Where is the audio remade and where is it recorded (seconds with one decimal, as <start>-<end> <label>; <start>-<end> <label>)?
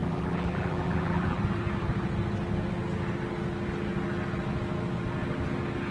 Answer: 0.0-1.4 remade; 1.4-5.9 recorded